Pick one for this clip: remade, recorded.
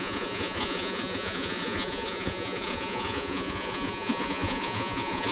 remade